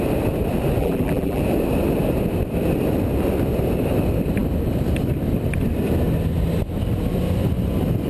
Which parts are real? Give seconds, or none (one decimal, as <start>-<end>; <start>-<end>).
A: 0.0-0.8; 1.4-8.1